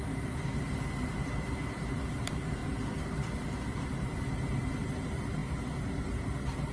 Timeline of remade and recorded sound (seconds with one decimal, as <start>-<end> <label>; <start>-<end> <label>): 0.0-6.7 remade